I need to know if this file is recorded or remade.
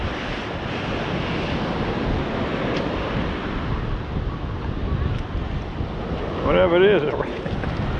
recorded